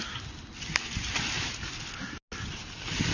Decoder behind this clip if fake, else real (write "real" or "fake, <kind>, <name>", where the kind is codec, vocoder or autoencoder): real